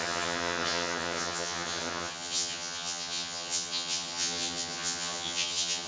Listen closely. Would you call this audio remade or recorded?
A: remade